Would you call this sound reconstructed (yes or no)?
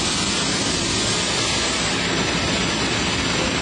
no